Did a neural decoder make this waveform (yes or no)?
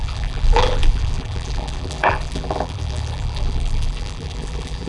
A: yes